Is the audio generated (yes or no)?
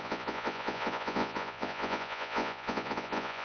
yes